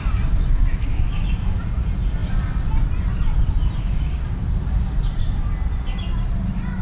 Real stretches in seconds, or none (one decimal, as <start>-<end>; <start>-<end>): 0.0-6.8

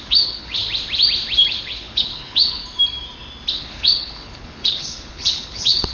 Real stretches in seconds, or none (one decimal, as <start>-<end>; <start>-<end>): 0.6-1.4; 2.6-3.5

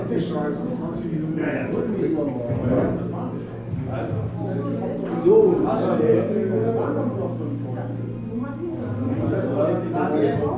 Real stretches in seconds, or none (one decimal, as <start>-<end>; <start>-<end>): 0.0-6.1; 6.9-10.6

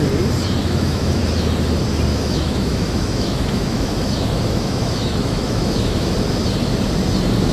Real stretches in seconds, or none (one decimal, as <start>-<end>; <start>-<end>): 0.0-0.6; 1.2-2.1; 6.1-7.5